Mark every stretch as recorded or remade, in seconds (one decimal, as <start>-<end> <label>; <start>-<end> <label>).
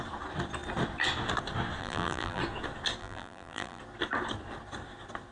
0.0-1.8 recorded; 1.8-2.4 remade; 2.4-3.0 recorded; 3.0-3.8 remade; 3.8-5.3 recorded